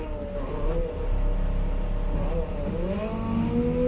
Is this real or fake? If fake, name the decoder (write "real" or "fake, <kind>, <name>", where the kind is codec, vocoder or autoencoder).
real